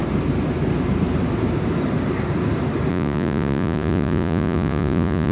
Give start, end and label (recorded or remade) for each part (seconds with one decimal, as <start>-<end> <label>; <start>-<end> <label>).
0.0-2.9 recorded; 2.9-5.3 remade

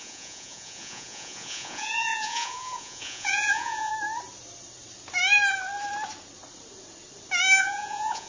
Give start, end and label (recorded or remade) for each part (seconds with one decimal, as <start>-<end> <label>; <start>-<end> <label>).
0.0-3.9 remade; 3.9-7.6 recorded; 7.6-8.3 remade

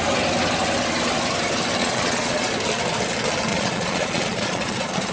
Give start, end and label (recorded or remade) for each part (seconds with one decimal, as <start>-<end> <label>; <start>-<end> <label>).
0.0-1.8 recorded; 1.8-2.5 remade; 2.5-3.5 recorded; 3.5-5.1 remade

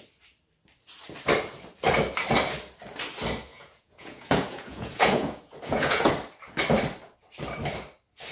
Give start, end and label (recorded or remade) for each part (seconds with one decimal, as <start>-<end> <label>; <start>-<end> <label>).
0.0-3.5 recorded; 3.5-6.1 remade; 6.1-8.3 recorded

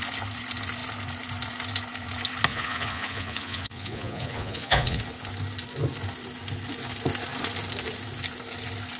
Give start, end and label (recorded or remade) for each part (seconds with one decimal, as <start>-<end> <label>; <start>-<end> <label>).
0.0-2.5 recorded; 2.5-5.0 remade; 5.0-9.0 recorded